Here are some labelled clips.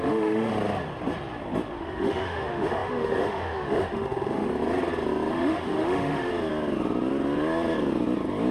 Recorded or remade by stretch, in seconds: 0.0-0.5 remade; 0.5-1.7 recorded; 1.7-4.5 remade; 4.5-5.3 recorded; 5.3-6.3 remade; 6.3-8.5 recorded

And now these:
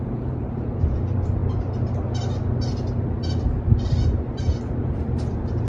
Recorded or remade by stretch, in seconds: 0.0-1.4 remade; 1.4-4.8 recorded; 4.8-5.7 remade

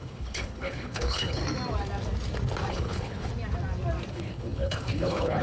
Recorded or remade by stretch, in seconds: 0.0-1.4 remade; 1.4-2.7 recorded; 2.7-3.3 remade; 3.3-4.1 recorded; 4.1-5.4 remade

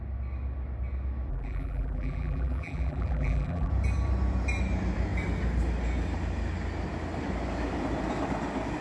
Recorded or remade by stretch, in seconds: 0.0-1.3 recorded; 1.3-3.7 remade; 3.7-8.8 recorded